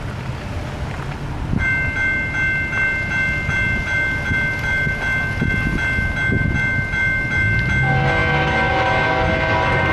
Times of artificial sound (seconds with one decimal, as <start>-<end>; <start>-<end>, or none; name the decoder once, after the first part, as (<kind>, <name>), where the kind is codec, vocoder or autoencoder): none